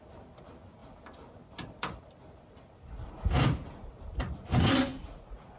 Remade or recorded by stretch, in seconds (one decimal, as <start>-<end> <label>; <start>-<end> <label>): 0.0-4.9 recorded; 4.9-5.6 remade

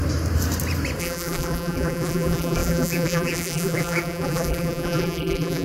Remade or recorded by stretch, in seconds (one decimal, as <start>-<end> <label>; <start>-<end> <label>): 0.0-1.0 recorded; 1.0-5.6 remade

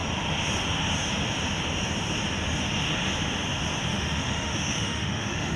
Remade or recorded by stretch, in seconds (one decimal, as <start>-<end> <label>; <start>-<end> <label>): 0.0-3.9 recorded; 3.9-5.6 remade

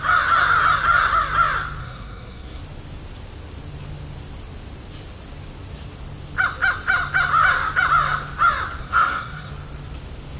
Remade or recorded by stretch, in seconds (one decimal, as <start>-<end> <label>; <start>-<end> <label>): 0.0-1.8 recorded; 1.8-2.6 remade; 2.6-8.8 recorded; 8.8-9.5 remade; 9.5-10.4 recorded

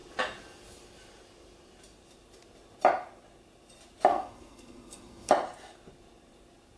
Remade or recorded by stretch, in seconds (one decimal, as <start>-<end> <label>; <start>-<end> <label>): 0.0-4.1 recorded; 4.1-5.3 remade; 5.3-6.8 recorded